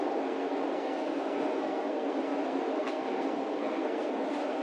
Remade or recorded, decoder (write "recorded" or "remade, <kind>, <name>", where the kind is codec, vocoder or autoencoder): remade, codec, SNAC